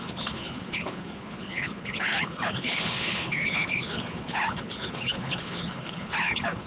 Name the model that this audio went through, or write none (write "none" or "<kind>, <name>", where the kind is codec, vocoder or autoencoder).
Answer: codec, HILCodec